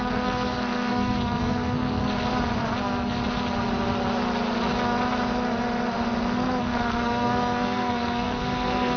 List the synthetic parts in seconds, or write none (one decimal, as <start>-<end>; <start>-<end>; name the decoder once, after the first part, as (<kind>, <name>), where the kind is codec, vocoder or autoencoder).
0.0-2.0 (codec, SNAC); 6.6-9.0